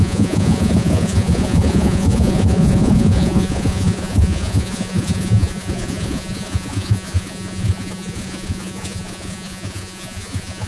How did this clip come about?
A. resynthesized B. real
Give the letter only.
A